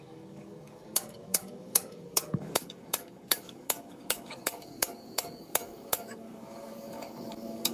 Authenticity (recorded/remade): remade